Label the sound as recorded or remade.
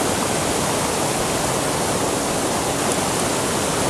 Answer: recorded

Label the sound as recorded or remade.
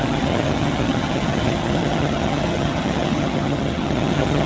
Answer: remade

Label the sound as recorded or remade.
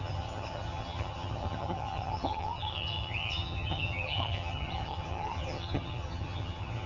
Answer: remade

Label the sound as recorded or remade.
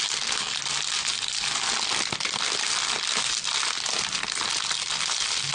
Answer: recorded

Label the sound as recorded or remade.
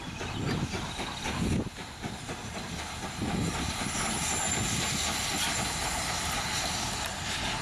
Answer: recorded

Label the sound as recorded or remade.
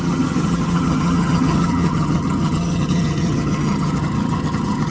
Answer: remade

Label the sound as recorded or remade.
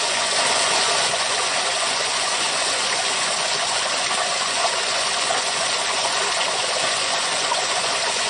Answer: remade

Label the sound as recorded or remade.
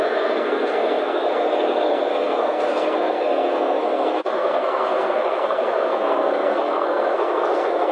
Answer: remade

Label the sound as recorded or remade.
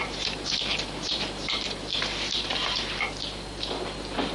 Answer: remade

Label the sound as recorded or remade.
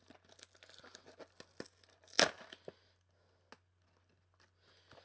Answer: recorded